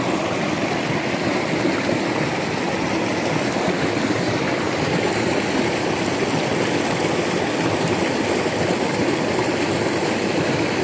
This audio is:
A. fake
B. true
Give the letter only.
B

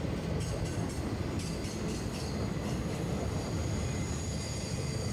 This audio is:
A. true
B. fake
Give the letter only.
A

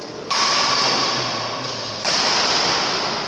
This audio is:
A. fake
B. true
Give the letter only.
B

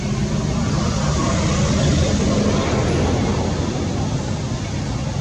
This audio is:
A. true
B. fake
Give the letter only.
A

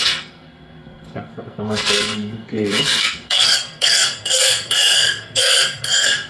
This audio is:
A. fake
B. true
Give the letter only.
A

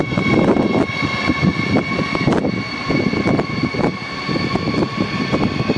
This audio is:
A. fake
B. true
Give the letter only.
B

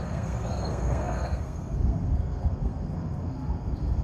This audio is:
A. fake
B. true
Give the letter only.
A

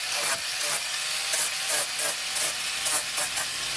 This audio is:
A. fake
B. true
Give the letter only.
B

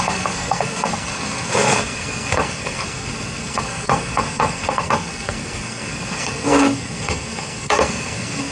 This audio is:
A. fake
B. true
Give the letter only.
A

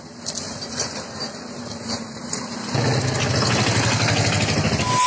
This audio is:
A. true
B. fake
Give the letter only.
A